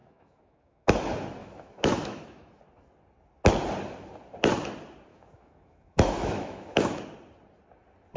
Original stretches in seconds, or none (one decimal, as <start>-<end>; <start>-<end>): 0.9-1.4; 2.6-5.1; 7.0-8.2